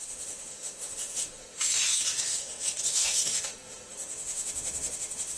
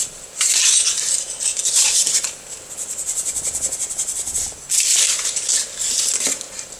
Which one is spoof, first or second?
first